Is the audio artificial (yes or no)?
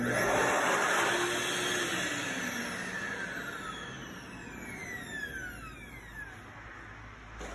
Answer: no